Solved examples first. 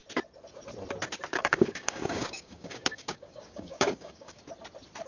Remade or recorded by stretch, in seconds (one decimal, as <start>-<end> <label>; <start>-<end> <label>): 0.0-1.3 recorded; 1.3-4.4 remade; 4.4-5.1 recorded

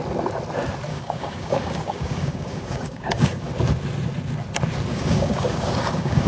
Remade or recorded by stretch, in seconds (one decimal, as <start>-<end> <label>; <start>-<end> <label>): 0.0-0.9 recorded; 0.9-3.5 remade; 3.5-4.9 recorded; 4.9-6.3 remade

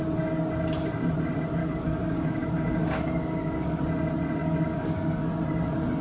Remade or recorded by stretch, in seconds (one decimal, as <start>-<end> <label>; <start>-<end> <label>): 0.0-1.6 recorded; 1.6-3.8 remade; 3.8-4.4 recorded; 4.4-5.3 remade; 5.3-6.0 recorded

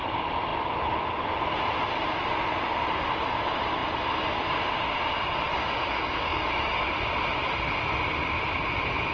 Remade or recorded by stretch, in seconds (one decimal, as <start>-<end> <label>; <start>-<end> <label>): 0.0-5.5 recorded; 5.5-6.9 remade; 6.9-9.1 recorded